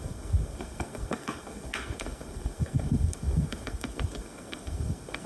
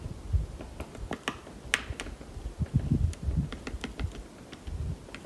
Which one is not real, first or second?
first